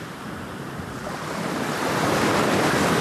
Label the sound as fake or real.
real